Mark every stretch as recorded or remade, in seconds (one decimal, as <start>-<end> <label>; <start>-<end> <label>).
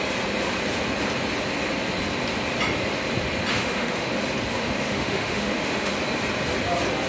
0.0-3.5 recorded; 3.5-4.1 remade; 4.1-4.6 recorded; 4.6-5.9 remade; 5.9-7.1 recorded